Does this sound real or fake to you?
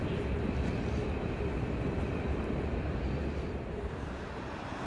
real